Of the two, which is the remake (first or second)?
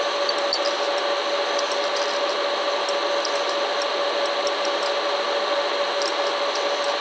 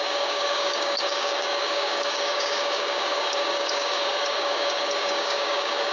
second